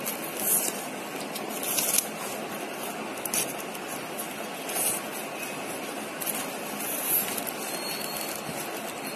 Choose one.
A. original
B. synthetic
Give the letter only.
A